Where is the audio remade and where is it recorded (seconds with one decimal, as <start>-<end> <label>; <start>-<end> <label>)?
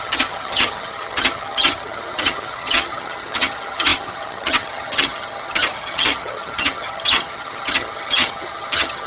0.0-9.1 remade